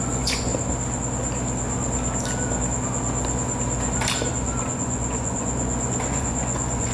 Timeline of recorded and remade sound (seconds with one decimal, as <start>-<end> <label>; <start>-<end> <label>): 0.0-0.5 remade; 0.5-4.3 recorded; 4.3-6.9 remade